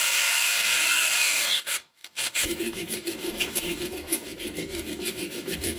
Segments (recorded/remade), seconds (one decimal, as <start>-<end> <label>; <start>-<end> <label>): 0.0-5.8 remade